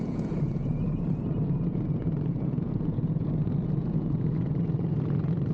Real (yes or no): no